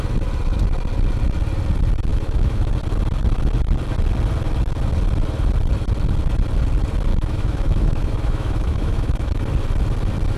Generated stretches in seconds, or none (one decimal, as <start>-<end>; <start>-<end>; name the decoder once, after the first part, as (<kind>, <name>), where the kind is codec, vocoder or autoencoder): 2.1-2.7 (autoencoder, DAC-VAE); 7.1-9.4